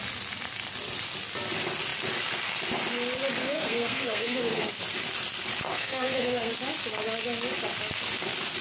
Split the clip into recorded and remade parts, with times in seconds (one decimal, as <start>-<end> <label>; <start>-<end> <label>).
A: 0.0-3.4 recorded; 3.4-4.7 remade; 4.7-5.7 recorded; 5.7-6.5 remade; 6.5-8.6 recorded